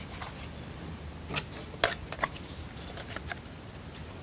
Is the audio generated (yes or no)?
no